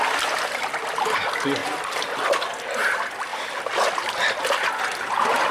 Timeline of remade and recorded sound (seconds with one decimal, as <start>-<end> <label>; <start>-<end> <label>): 0.0-3.3 recorded; 3.3-4.2 remade; 4.2-5.5 recorded